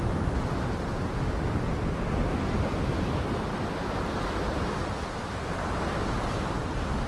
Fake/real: real